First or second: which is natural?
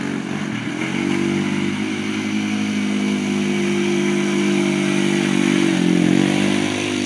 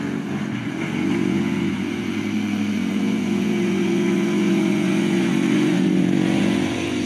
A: first